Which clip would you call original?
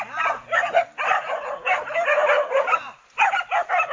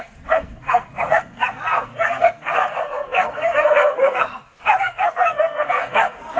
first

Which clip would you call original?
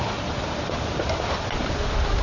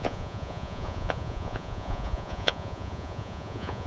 first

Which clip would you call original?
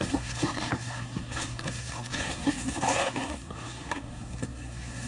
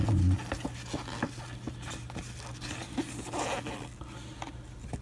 second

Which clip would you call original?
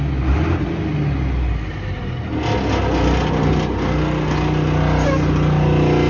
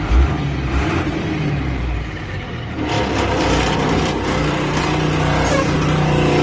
first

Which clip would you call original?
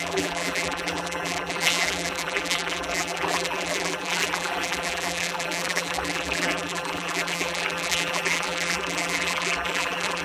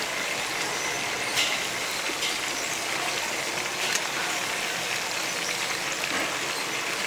second